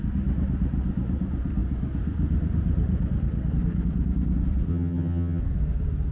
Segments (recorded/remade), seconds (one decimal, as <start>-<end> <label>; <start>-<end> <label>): 0.0-4.7 recorded; 4.7-5.4 remade; 5.4-6.1 recorded